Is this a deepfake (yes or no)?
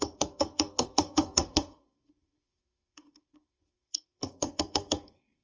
yes